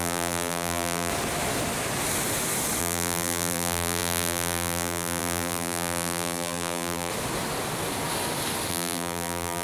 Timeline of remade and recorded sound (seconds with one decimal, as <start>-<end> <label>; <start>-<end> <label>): 0.0-1.1 remade; 1.1-2.8 recorded; 2.8-7.1 remade; 7.1-8.7 recorded; 8.7-9.6 remade